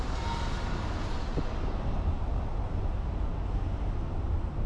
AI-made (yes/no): no